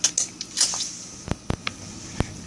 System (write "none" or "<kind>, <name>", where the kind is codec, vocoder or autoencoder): none